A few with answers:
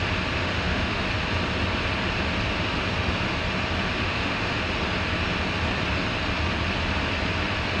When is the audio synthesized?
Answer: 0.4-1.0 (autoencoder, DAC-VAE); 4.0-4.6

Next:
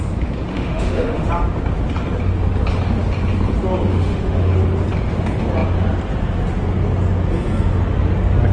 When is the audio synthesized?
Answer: 0.5-1.3 (autoencoder, DAC-VAE); 3.9-4.5

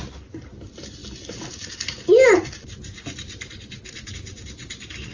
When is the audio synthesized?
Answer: none

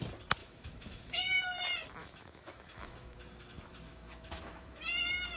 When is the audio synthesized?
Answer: 0.4-1.2 (autoencoder, DAC-VAE); 2.0-3.2; 3.9-4.8

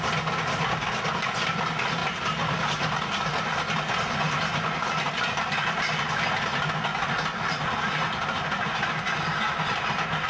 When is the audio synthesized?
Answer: none